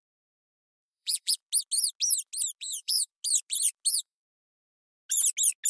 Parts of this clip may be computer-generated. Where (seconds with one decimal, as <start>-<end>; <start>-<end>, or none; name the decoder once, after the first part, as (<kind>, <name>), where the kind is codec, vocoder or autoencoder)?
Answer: 0.0-1.4 (vocoder, BigVGAN v2); 2.6-3.1; 3.9-4.4